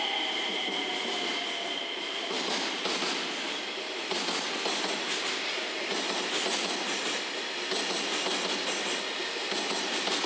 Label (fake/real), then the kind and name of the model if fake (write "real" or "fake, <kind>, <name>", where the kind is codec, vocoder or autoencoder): real